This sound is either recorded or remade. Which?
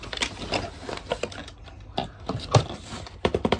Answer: recorded